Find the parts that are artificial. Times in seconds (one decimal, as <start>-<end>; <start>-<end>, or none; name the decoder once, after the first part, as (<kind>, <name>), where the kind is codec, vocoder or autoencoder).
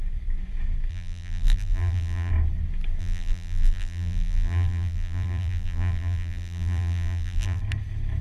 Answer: 0.9-2.3 (vocoder, BigVGAN v2); 3.0-7.6